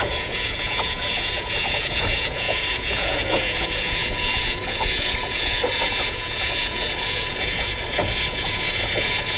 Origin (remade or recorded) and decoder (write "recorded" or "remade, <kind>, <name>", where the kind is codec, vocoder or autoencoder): remade, vocoder, Vocos